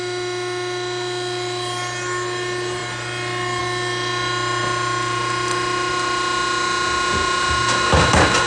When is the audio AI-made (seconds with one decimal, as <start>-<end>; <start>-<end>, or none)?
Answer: none